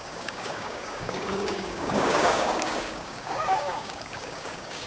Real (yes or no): no